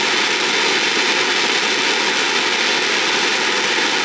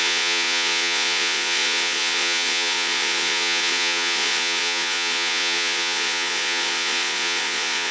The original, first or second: first